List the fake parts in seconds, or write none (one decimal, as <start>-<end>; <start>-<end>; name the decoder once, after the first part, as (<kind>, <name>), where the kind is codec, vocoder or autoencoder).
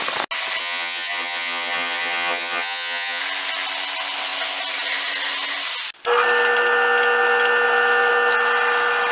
0.6-3.2 (vocoder, HiFi-GAN)